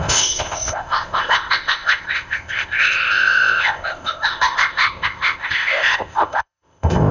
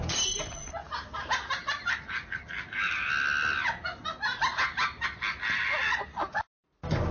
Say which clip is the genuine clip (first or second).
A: second